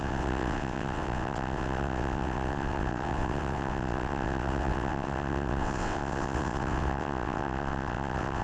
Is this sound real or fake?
fake